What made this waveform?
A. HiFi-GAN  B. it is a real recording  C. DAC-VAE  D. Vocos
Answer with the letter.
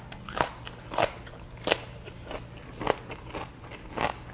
B